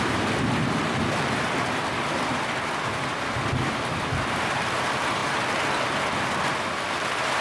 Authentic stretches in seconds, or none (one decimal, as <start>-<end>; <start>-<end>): 5.2-6.5